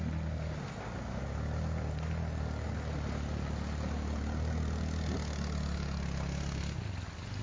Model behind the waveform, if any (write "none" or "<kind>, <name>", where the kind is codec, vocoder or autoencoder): none